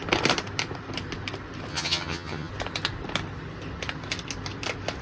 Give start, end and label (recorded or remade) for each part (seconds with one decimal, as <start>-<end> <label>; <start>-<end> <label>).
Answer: 0.0-1.7 recorded; 1.7-2.5 remade; 2.5-5.0 recorded